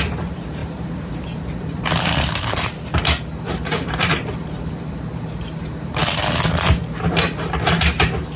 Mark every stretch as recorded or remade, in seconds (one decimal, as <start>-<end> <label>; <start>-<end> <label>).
0.0-6.0 remade; 6.0-6.5 recorded; 6.5-8.4 remade